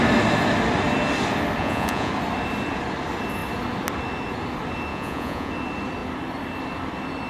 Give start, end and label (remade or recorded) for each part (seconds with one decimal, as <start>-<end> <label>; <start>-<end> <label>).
0.0-1.6 recorded; 1.6-2.1 remade; 2.1-4.9 recorded; 4.9-5.5 remade; 5.5-7.3 recorded